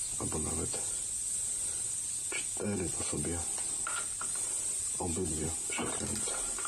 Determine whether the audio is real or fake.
real